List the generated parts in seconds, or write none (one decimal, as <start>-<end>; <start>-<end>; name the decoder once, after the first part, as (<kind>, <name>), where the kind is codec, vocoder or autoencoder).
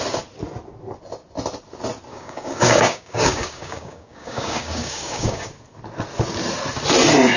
2.1-5.5 (codec, DAC)